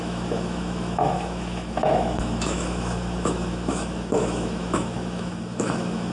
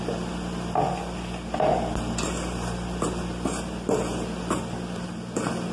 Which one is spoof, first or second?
first